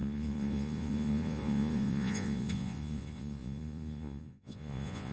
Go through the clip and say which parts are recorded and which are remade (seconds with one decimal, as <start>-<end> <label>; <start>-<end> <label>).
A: 0.0-5.1 remade